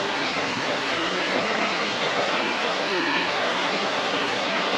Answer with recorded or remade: remade